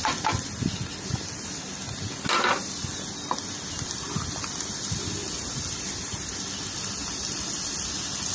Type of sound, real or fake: real